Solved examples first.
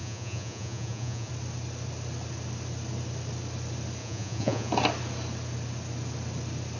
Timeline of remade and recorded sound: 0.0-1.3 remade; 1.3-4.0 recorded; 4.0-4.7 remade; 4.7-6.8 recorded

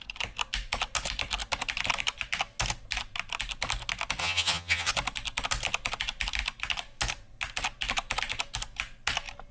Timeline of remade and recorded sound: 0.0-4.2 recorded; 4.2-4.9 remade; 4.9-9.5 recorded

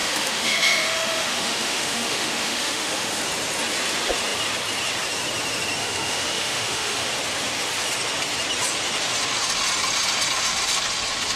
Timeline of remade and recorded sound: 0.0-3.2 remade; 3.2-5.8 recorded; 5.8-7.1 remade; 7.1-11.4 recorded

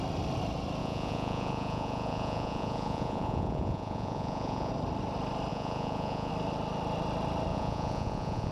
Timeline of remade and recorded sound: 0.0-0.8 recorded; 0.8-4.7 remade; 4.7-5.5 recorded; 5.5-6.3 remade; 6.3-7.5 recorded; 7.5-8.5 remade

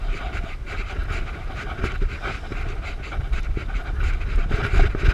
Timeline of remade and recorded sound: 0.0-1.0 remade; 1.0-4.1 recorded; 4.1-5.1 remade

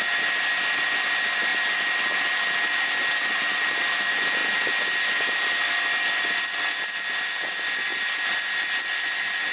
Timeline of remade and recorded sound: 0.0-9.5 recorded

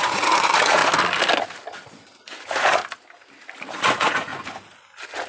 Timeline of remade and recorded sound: 0.0-0.8 remade; 0.8-2.2 recorded; 2.2-2.8 remade; 2.8-3.7 recorded; 3.7-4.3 remade; 4.3-5.3 recorded